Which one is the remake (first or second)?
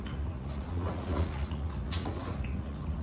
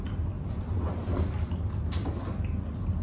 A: first